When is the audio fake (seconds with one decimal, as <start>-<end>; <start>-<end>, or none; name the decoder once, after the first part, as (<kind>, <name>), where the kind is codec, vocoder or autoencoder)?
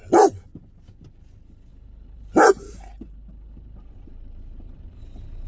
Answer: 1.7-5.0 (vocoder, BigVGAN v2)